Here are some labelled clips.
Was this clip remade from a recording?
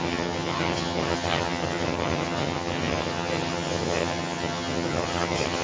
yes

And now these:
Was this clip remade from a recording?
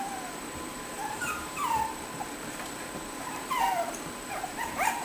yes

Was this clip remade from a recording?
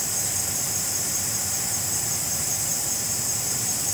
yes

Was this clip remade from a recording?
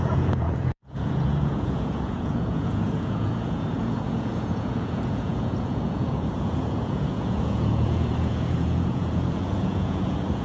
yes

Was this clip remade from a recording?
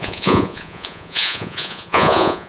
yes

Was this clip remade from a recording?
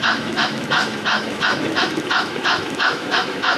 yes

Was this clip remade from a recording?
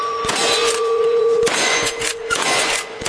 yes